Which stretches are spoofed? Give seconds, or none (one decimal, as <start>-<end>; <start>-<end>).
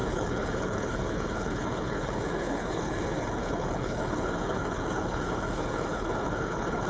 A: 0.0-6.9